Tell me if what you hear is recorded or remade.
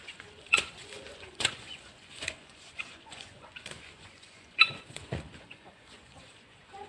remade